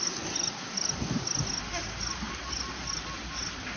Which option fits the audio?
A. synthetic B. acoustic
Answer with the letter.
B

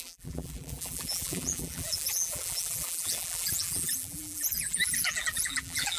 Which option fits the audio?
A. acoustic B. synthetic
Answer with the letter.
B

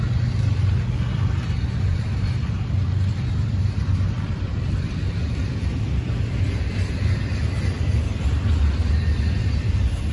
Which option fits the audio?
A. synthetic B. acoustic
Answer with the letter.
A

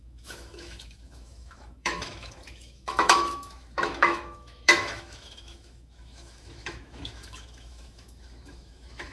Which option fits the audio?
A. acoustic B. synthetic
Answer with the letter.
B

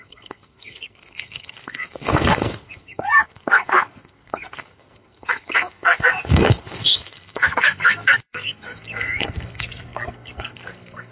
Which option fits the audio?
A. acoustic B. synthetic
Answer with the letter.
B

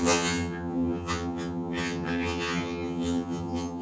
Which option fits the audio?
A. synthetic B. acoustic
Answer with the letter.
A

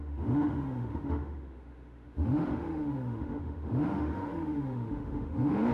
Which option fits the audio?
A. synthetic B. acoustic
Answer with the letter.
A